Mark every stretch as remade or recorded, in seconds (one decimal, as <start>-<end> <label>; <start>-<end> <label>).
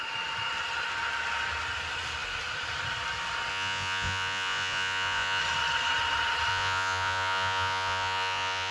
0.0-3.5 recorded; 3.5-5.4 remade; 5.4-6.5 recorded; 6.5-8.7 remade